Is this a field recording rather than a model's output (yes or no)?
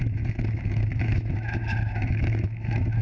no